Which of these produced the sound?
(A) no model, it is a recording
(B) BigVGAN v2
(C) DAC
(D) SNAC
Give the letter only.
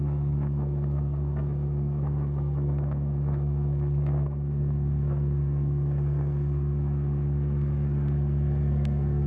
D